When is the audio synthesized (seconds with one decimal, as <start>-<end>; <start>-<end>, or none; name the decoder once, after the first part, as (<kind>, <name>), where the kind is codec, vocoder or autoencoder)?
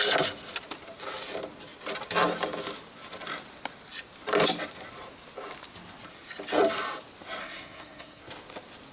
7.4-8.2 (codec, SNAC)